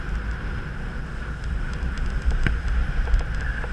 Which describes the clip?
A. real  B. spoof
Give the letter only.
A